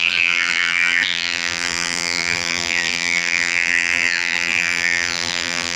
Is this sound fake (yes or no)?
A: yes